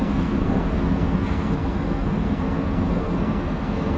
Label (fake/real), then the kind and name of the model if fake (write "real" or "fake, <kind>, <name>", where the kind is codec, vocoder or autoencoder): fake, codec, SNAC